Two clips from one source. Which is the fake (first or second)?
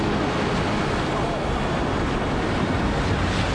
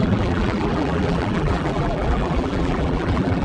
second